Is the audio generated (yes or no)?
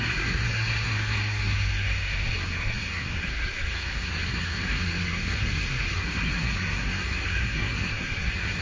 yes